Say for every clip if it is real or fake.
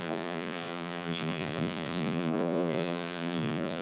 fake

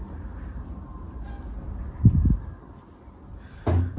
real